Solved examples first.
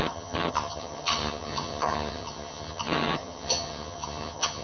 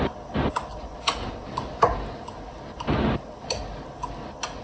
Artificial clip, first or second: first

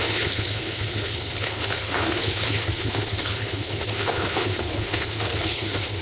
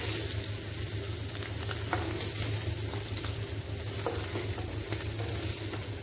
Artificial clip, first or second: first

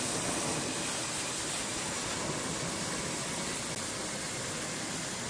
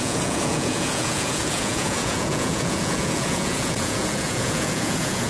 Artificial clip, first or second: second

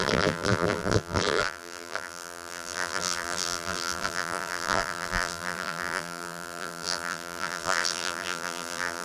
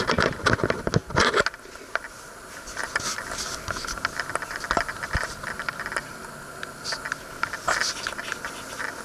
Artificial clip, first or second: first